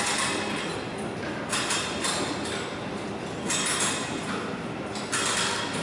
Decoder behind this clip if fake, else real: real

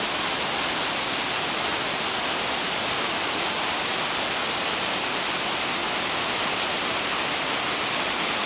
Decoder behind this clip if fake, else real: real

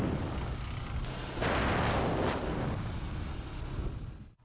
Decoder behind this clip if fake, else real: real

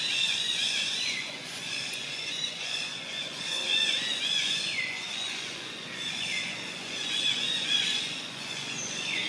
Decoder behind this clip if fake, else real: fake, vocoder, Vocos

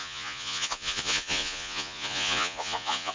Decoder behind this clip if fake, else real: fake, vocoder, Vocos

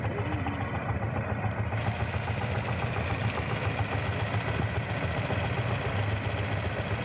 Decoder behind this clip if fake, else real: real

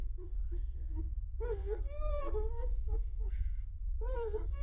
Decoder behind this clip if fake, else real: fake, codec, SNAC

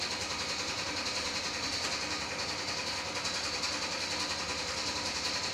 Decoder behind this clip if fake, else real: real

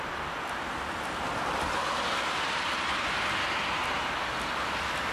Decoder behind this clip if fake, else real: real